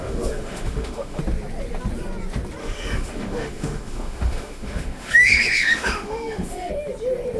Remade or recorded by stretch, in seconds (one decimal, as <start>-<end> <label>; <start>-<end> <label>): 0.0-1.2 remade; 1.2-2.6 recorded; 2.6-6.7 remade; 6.7-7.4 recorded